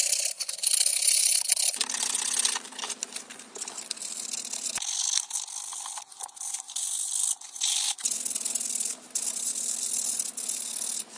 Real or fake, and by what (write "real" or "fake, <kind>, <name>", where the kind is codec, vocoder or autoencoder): real